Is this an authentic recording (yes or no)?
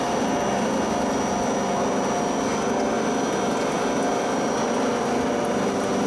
yes